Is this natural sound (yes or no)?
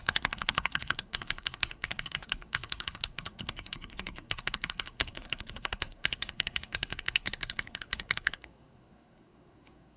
no